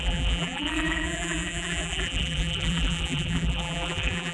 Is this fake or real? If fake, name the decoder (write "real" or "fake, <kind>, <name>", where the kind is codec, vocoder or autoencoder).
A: fake, vocoder, BigVGAN v2